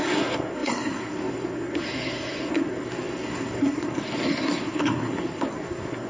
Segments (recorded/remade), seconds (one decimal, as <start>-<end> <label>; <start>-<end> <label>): 0.0-6.1 remade